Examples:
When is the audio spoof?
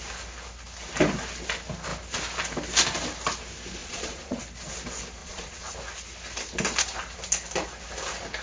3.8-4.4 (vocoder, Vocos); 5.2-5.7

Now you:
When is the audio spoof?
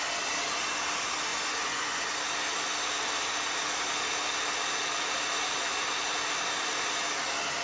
1.3-2.2 (vocoder, Vocos)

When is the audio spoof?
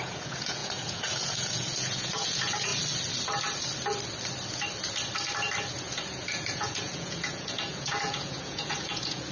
0.0-2.7 (vocoder, Vocos); 5.7-9.3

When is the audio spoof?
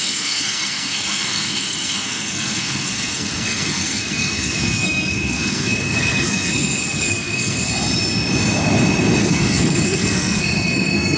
0.0-7.7 (codec, SNAC); 9.2-11.2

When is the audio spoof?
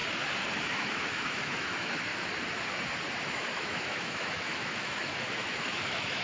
0.6-2.1 (autoencoder, DAC-VAE); 3.2-6.2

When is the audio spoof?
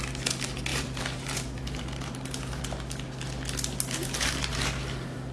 0.7-2.6 (vocoder, BigVGAN v2); 4.0-5.3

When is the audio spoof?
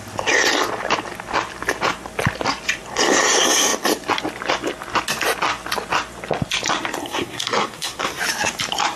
7.0-8.2 (codec, SNAC)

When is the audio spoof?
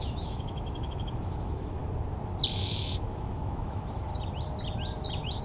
0.0-1.8 (autoencoder, DAC-VAE); 2.5-4.1